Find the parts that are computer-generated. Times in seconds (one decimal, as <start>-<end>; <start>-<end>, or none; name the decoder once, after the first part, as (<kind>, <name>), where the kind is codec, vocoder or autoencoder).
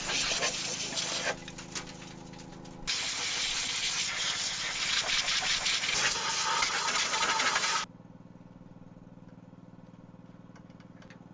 none